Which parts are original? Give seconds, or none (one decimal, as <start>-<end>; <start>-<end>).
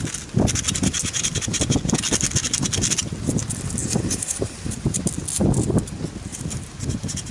0.0-1.0; 1.6-3.8; 5.0-6.3